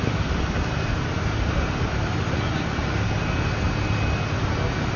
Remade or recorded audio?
recorded